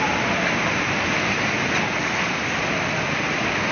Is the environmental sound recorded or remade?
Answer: recorded